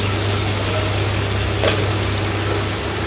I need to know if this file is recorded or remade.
recorded